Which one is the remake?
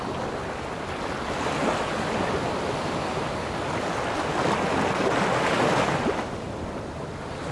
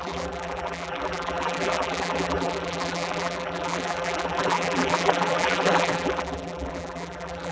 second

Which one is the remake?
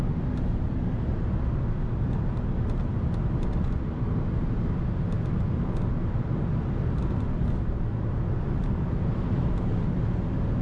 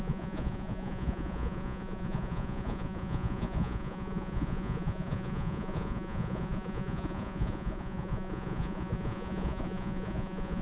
second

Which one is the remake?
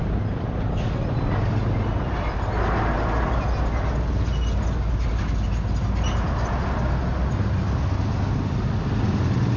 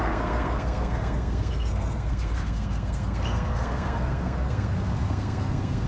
second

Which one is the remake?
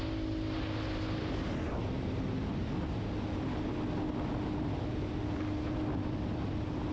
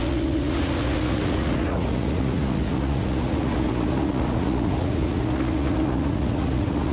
second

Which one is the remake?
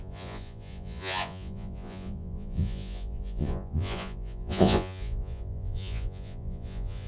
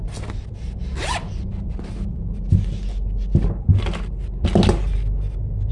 first